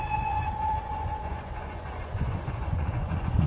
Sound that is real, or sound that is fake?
fake